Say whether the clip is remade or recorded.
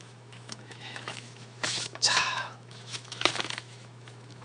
remade